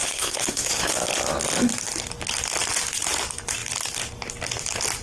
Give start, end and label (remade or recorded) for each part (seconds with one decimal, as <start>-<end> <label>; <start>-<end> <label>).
0.0-0.9 remade; 0.9-5.0 recorded